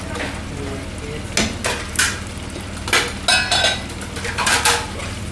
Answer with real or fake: real